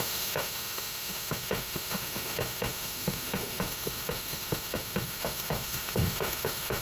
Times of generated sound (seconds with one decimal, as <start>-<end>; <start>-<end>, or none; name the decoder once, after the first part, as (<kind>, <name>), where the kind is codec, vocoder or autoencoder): 0.0-6.8 (autoencoder, DAC-VAE)